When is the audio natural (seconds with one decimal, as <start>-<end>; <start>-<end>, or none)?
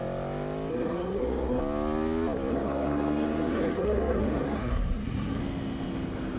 0.0-0.7; 1.6-2.5; 5.4-6.4